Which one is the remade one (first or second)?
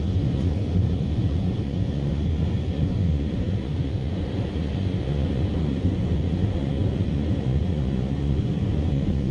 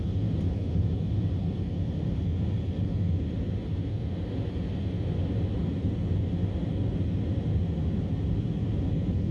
first